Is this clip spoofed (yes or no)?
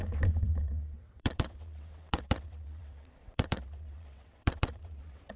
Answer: yes